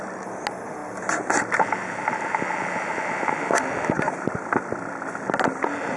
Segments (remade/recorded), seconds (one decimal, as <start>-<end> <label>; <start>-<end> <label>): 0.0-6.0 recorded